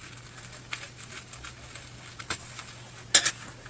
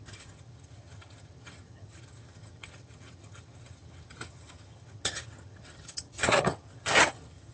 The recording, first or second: first